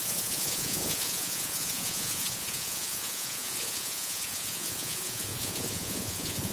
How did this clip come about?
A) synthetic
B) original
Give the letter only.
A